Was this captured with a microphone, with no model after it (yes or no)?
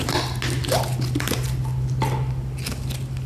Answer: yes